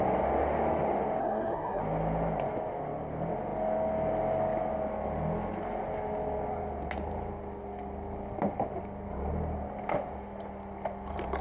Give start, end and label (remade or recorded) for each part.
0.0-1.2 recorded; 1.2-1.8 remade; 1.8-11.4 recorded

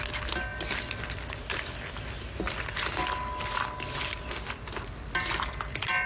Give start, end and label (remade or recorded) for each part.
0.0-6.1 recorded

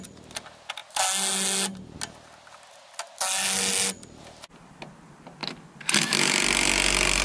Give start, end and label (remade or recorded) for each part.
0.0-7.2 recorded

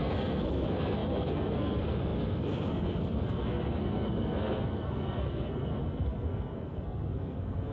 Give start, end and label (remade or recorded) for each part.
0.0-7.7 remade